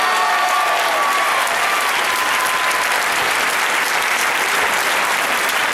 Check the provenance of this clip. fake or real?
real